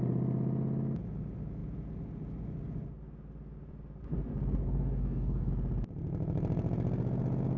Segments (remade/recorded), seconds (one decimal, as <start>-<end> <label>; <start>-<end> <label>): 0.0-4.6 recorded; 4.6-5.5 remade; 5.5-7.6 recorded